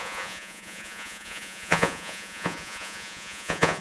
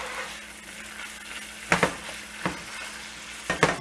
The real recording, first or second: second